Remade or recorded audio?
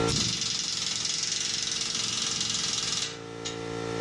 recorded